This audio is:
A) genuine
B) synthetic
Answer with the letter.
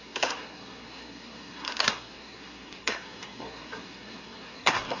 B